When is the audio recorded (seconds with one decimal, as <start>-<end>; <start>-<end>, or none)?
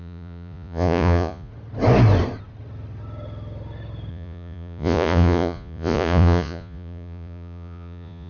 1.5-4.1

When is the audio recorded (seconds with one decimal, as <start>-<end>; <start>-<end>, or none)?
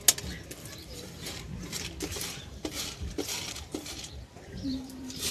0.0-0.8; 1.4-2.1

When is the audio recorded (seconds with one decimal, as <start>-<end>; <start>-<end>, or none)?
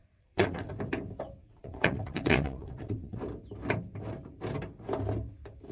0.7-1.4; 3.2-5.7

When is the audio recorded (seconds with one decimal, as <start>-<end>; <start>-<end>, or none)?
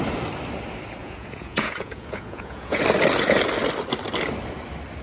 0.0-1.0; 2.8-5.0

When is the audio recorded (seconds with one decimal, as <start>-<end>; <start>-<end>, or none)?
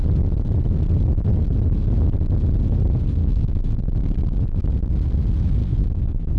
0.0-3.2; 3.8-5.6